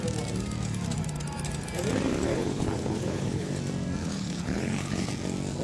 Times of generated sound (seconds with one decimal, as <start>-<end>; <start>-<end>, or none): 2.3-3.5; 4.0-5.1